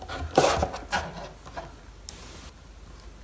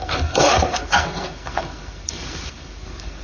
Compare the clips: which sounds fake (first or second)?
second